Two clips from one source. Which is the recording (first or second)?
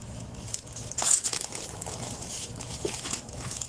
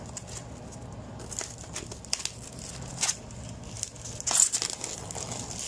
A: second